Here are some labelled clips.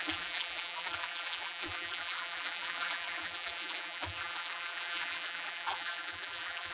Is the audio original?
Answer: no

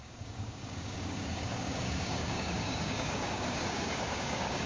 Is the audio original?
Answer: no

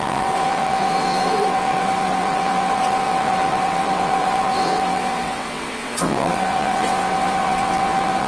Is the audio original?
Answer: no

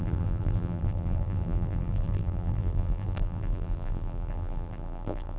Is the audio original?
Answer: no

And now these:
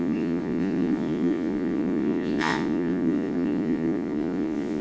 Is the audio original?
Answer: no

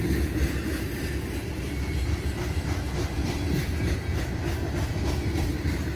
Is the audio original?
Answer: yes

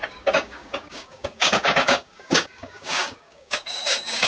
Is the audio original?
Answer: no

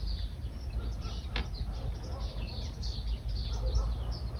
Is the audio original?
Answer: yes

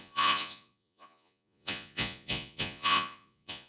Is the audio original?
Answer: no